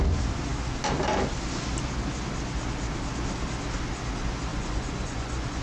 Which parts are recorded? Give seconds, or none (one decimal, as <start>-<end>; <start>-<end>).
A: 0.0-4.5